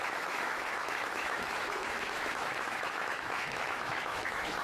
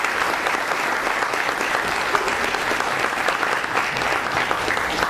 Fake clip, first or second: first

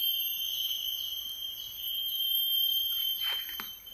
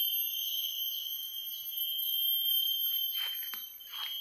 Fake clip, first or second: first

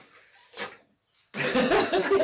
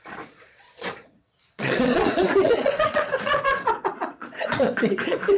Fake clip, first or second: second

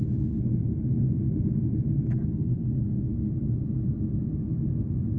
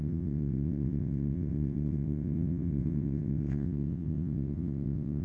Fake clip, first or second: second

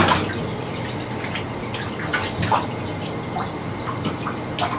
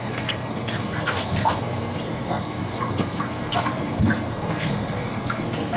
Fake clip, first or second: second